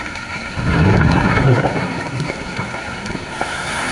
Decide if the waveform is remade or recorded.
remade